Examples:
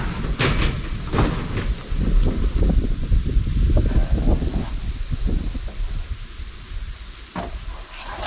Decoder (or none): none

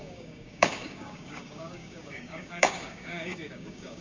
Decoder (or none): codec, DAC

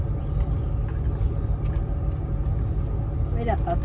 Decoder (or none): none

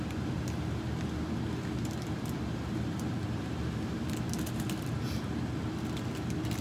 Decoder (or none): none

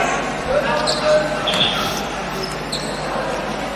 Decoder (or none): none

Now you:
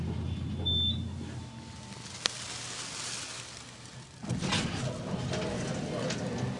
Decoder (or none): none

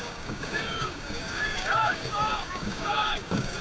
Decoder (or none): codec, DAC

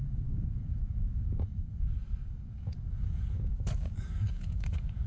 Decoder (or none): codec, DAC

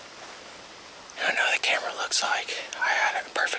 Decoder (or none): none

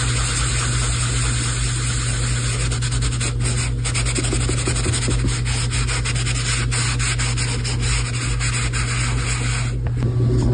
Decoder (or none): none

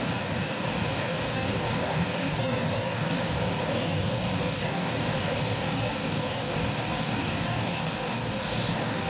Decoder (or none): codec, DAC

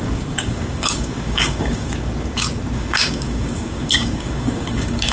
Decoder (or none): codec, DAC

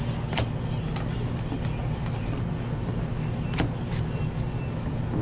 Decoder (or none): none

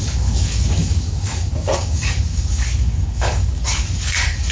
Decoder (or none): codec, DAC